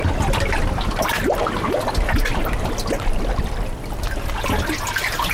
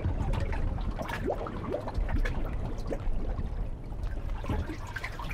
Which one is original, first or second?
first